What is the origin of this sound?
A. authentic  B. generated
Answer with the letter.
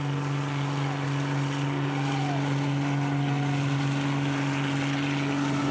A